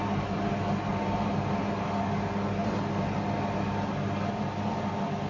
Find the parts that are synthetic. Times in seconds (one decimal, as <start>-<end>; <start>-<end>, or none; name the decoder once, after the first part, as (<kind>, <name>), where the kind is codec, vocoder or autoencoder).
none